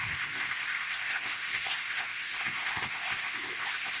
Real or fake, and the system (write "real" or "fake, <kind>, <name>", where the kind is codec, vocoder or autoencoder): fake, codec, ZipCodec